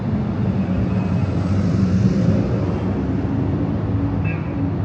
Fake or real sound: real